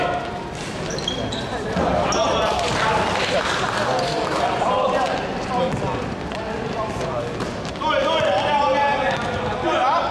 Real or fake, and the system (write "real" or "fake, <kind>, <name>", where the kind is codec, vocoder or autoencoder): real